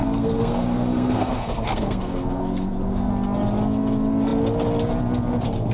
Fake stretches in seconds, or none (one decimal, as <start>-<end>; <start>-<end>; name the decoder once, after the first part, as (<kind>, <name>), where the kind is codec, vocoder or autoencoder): 0.0-3.1 (codec, SNAC)